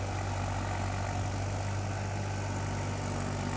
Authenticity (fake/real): real